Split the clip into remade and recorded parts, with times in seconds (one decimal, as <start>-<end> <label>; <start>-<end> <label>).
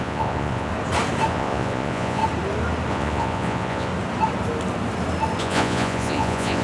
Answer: 0.0-0.7 remade; 0.7-1.3 recorded; 1.3-2.2 remade; 2.2-2.9 recorded; 2.9-3.9 remade; 3.9-5.4 recorded; 5.4-6.6 remade